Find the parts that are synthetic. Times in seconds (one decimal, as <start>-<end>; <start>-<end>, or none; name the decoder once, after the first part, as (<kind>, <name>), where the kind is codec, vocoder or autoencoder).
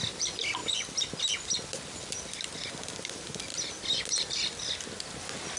none